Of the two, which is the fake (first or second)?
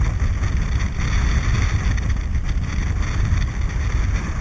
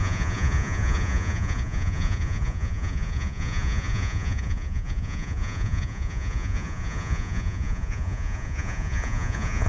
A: second